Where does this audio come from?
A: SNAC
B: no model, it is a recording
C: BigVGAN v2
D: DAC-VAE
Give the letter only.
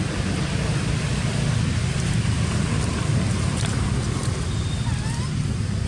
B